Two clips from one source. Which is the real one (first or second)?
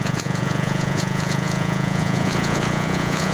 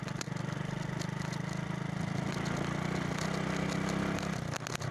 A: second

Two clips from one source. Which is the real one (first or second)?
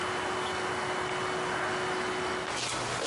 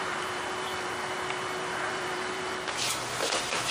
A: first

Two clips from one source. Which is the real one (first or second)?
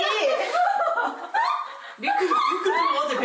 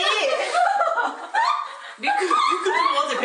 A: first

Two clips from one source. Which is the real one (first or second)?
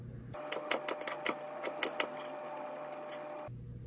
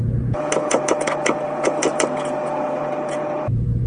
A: first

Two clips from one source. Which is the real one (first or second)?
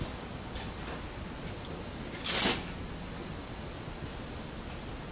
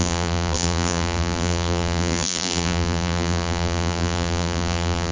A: first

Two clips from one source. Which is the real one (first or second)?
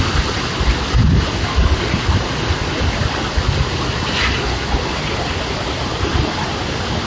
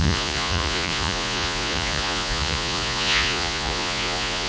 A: first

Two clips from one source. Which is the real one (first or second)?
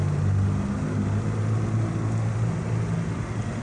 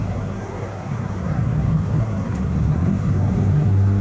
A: first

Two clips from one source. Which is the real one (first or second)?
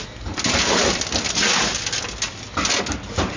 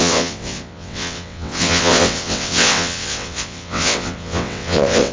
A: first